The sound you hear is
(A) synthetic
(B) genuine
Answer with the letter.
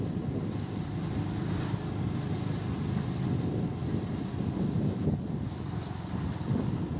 B